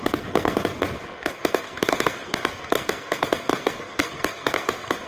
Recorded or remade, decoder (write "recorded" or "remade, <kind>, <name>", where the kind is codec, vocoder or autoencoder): remade, codec, SNAC